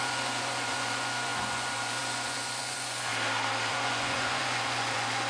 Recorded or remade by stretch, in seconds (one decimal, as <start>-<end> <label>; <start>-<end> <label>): 0.0-3.1 remade; 3.1-3.7 recorded; 3.7-5.3 remade